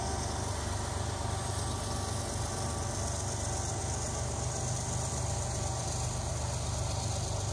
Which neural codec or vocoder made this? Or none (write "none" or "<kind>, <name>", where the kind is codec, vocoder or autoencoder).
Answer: none